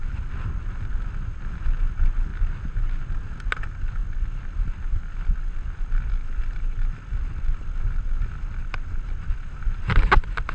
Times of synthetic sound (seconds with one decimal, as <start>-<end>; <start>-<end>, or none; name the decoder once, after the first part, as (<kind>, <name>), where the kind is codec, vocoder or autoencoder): 2.3-3.0 (vocoder, BigVGAN v2)